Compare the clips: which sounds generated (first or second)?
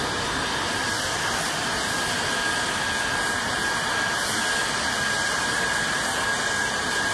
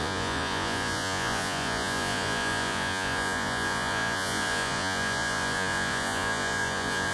second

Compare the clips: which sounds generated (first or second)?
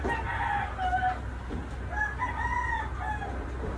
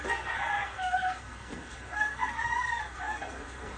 second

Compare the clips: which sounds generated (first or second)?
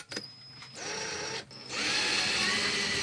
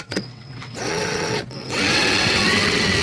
second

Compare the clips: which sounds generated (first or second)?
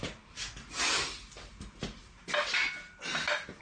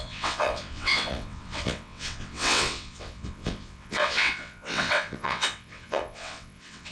second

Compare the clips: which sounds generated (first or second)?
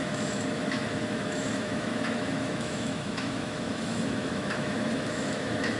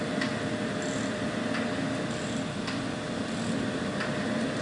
first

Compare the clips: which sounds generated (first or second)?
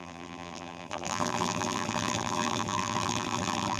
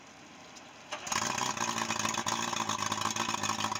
first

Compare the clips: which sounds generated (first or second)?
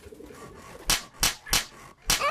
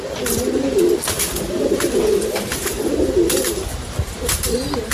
second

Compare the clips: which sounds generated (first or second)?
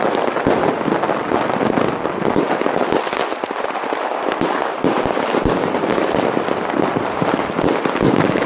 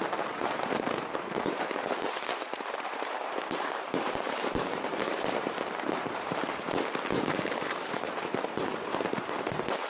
second